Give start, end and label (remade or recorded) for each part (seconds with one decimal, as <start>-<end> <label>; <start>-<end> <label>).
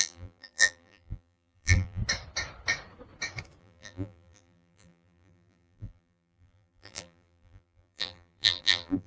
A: 0.0-2.0 remade; 2.0-3.6 recorded; 3.6-9.1 remade